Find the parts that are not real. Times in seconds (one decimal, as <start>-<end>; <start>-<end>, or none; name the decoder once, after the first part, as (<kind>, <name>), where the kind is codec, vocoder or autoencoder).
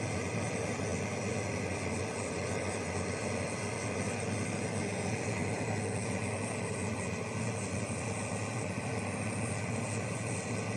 none